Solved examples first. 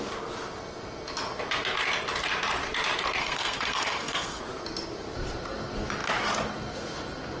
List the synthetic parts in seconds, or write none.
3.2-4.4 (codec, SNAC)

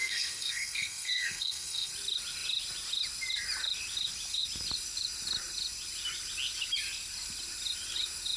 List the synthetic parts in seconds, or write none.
0.0-1.9 (codec, SNAC)

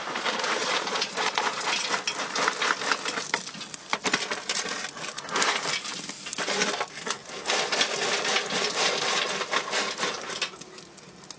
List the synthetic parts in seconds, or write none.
0.6-1.7 (vocoder, Vocos)

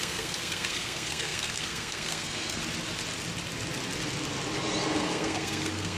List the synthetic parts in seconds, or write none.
0.0-2.6 (codec, SNAC); 5.0-6.0

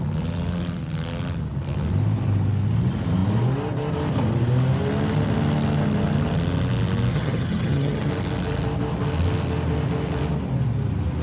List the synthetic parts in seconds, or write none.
7.1-8.1 (vocoder, HiFi-GAN)

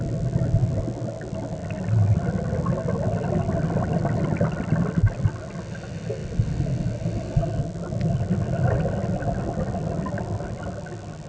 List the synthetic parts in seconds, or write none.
none